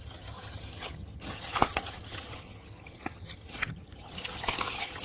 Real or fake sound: fake